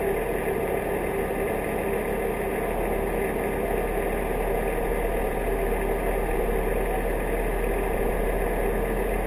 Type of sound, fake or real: real